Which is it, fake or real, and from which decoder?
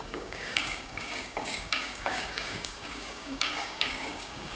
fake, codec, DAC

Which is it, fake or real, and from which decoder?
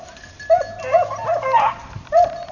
real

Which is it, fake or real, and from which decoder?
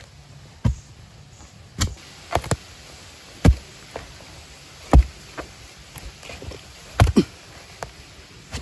real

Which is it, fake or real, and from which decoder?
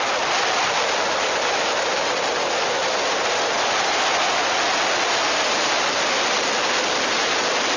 real